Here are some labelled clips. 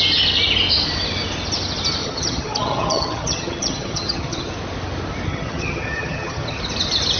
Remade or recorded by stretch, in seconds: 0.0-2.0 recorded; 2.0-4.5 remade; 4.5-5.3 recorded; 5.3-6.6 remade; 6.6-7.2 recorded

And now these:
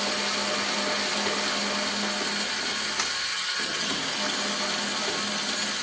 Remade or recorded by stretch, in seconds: 0.0-3.3 recorded; 3.3-3.9 remade; 3.9-5.8 recorded

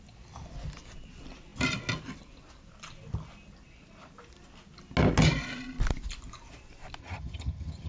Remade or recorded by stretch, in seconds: 0.0-7.0 recorded; 7.0-7.9 remade